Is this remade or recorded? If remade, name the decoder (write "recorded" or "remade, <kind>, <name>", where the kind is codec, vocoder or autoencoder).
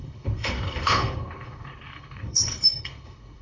remade, codec, HILCodec